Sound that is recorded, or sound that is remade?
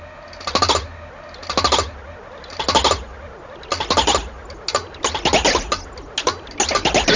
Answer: recorded